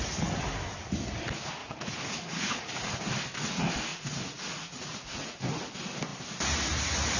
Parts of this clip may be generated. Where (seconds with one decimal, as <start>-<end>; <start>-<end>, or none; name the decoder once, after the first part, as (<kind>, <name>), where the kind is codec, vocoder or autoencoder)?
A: 1.6-3.0 (vocoder, Vocos); 3.9-5.4